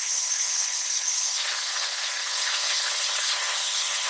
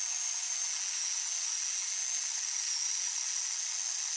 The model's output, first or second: first